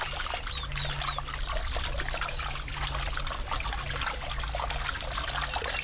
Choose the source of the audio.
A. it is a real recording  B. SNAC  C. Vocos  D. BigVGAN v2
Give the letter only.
A